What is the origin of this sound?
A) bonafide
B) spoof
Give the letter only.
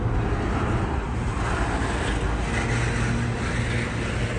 A